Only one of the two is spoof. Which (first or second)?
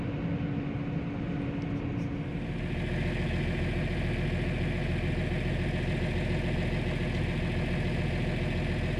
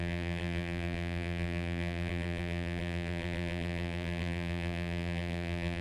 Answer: second